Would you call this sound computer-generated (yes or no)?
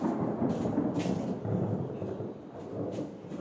no